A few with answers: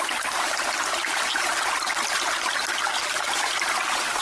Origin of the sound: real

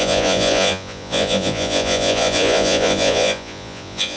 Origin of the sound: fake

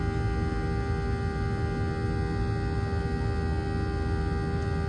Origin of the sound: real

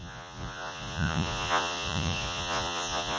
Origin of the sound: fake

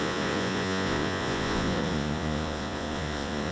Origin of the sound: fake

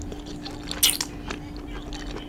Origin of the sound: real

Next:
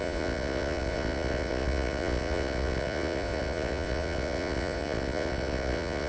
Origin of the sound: fake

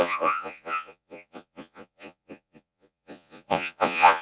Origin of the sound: fake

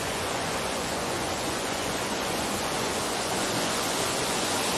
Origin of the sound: fake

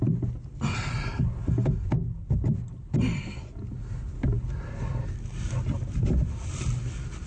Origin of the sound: real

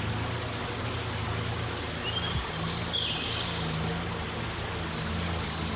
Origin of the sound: real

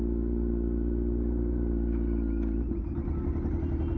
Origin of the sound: real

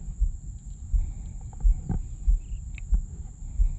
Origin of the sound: real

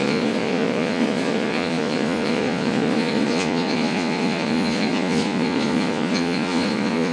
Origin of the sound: fake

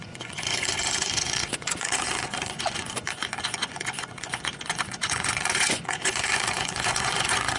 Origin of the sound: fake